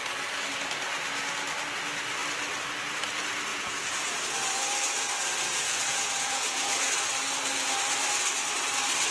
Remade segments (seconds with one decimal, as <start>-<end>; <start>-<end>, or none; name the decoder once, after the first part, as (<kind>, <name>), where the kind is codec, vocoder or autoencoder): 3.5-4.1 (vocoder, Vocos); 5.5-6.9